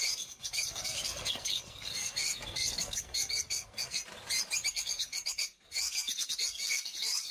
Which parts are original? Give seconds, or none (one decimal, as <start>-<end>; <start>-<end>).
4.0-4.7